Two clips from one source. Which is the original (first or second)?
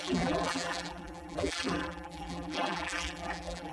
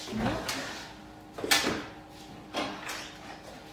second